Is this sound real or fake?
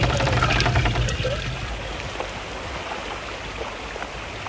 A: real